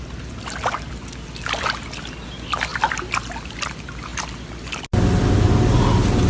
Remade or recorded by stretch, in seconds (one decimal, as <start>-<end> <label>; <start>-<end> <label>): 0.0-6.3 recorded